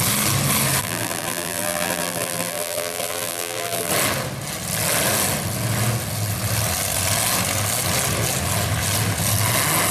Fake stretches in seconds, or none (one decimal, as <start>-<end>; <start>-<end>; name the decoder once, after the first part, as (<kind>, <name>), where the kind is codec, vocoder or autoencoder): 0.8-3.9 (vocoder, BigVGAN v2)